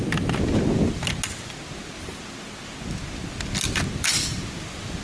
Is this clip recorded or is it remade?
recorded